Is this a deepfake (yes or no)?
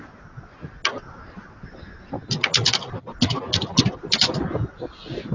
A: no